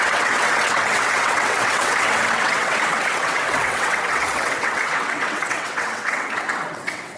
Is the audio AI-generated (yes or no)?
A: yes